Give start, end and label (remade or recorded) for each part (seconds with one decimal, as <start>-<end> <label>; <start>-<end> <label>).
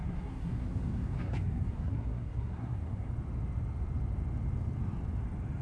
0.0-3.1 remade; 3.1-5.6 recorded